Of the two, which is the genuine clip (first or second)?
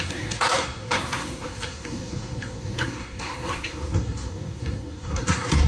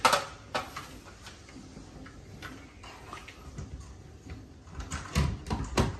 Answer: second